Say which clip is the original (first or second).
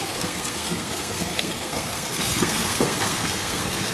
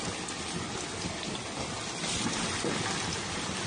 second